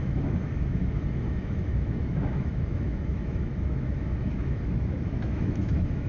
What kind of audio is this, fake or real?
fake